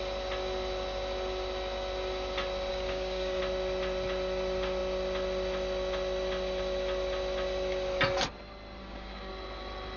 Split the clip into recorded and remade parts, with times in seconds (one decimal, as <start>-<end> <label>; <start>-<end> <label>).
0.0-2.7 recorded; 2.7-3.4 remade; 3.4-8.8 recorded; 8.8-9.3 remade; 9.3-10.0 recorded